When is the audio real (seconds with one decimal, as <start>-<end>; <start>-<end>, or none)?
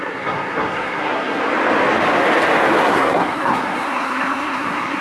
1.4-2.8